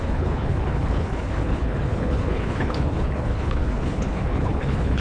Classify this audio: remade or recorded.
remade